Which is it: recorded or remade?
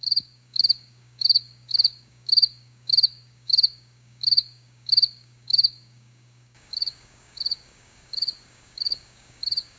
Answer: remade